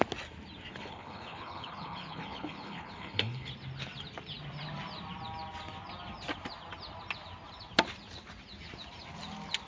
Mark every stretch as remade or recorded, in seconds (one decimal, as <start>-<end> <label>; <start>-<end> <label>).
0.0-0.7 recorded; 0.7-3.5 remade; 3.5-9.7 recorded